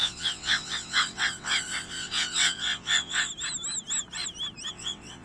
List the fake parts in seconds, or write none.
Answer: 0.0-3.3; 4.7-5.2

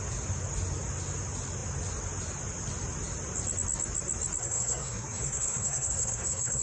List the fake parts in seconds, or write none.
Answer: 4.4-6.6

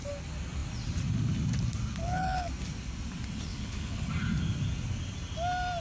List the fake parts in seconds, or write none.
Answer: 2.0-2.5; 3.5-4.1

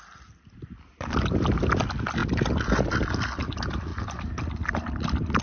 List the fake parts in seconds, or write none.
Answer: none

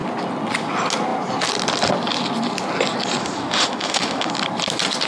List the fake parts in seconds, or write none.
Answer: 3.2-4.3